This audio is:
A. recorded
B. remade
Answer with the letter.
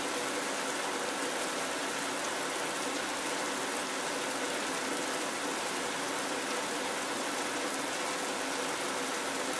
A